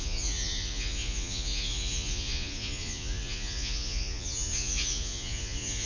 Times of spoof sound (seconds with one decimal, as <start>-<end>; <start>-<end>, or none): 0.0-5.9